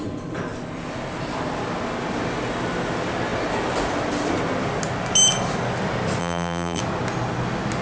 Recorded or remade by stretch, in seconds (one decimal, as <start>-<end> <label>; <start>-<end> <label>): 0.0-6.2 recorded; 6.2-6.8 remade; 6.8-7.8 recorded